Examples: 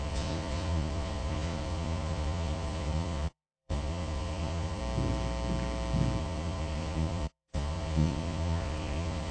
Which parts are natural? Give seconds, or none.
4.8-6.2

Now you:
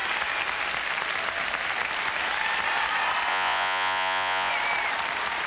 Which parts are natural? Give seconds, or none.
0.0-3.3; 4.5-5.5